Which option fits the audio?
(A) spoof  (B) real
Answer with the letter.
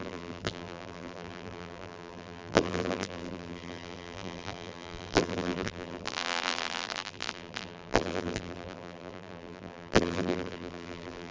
A